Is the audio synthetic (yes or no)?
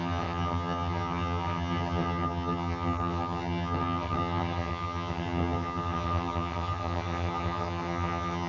yes